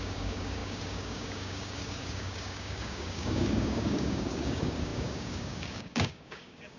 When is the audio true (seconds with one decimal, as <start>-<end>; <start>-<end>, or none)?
none